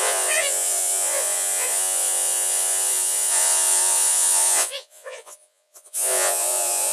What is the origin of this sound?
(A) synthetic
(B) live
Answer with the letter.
A